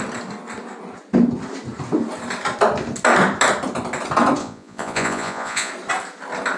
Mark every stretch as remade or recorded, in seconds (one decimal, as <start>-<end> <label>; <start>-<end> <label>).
0.0-4.4 recorded; 4.4-5.7 remade; 5.7-6.6 recorded